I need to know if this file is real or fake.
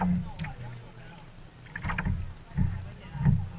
real